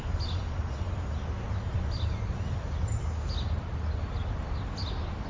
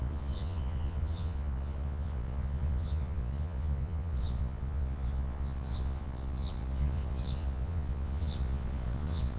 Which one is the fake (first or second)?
second